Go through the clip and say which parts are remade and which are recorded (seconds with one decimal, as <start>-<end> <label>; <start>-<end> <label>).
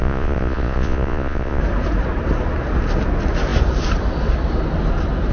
0.0-1.6 remade; 1.6-5.3 recorded